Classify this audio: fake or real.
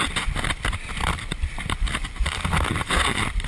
real